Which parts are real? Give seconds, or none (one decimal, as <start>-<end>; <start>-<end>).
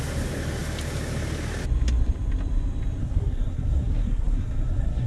0.0-3.0